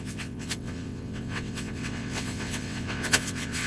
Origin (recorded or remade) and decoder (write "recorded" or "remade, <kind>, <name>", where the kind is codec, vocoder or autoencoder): remade, vocoder, WaveNeXt